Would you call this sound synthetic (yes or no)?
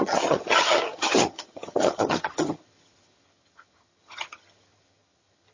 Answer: yes